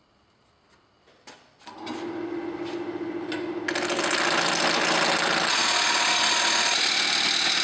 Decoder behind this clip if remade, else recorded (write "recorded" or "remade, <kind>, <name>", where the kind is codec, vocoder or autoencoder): recorded